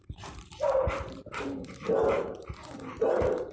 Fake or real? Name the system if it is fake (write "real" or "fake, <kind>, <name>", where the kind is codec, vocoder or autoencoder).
fake, vocoder, BigVGAN v2